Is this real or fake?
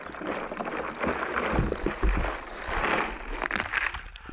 fake